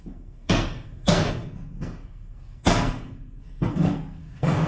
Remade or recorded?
remade